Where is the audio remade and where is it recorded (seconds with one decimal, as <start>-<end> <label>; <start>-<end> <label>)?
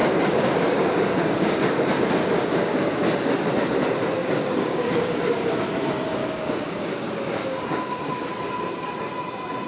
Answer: 0.0-1.6 remade; 1.6-2.2 recorded; 2.2-3.3 remade; 3.3-4.2 recorded; 4.2-5.6 remade; 5.6-6.2 recorded; 6.2-8.3 remade; 8.3-9.7 recorded